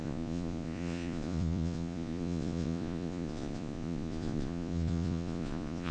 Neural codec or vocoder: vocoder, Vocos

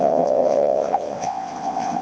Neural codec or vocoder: vocoder, WaveNeXt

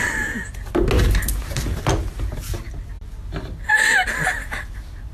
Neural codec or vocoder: none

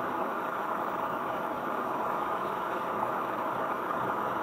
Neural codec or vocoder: codec, DAC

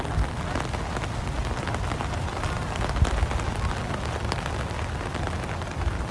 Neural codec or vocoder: none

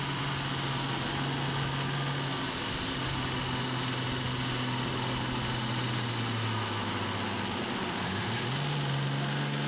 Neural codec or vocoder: none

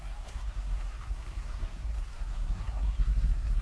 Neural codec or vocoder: codec, SNAC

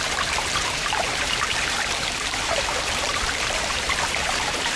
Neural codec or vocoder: vocoder, BigVGAN v2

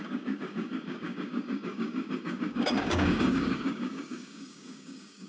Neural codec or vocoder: codec, DAC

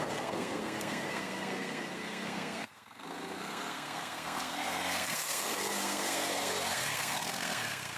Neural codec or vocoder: codec, SNAC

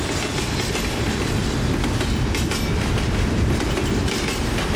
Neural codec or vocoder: none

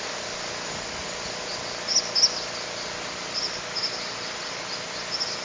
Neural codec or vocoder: none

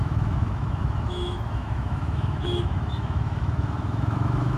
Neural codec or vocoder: autoencoder, DAC-VAE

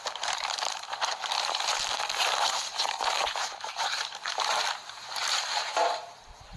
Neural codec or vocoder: vocoder, BigVGAN v2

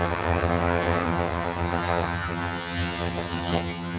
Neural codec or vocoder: vocoder, HiFi-GAN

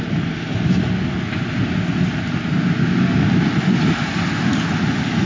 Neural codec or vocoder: none